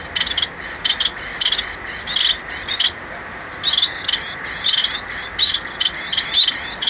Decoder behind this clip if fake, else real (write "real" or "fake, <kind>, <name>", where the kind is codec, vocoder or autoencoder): real